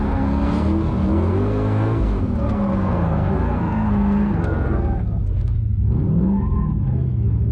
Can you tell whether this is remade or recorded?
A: remade